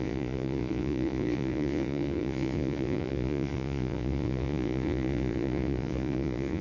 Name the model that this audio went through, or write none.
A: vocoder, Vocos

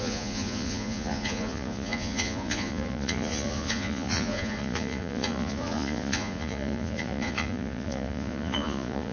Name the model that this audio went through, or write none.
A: vocoder, Vocos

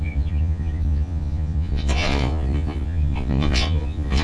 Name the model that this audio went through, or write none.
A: vocoder, Vocos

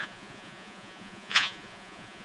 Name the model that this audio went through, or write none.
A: vocoder, Vocos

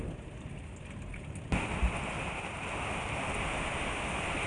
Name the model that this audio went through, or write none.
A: none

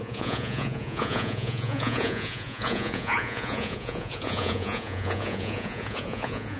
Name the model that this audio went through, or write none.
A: vocoder, Vocos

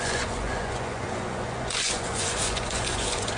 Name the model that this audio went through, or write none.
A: vocoder, Vocos